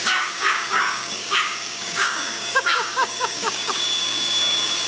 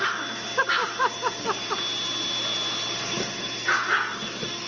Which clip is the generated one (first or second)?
first